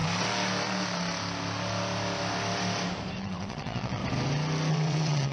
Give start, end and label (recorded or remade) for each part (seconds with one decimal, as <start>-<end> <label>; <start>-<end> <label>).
0.0-3.2 recorded; 3.2-4.0 remade; 4.0-4.7 recorded; 4.7-5.3 remade